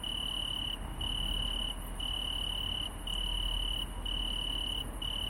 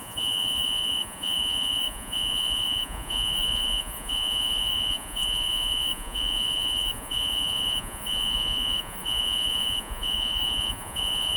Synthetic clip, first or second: second